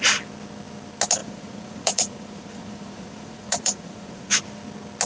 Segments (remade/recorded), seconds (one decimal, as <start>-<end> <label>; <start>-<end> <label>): 0.0-1.2 recorded; 1.2-4.3 remade; 4.3-5.1 recorded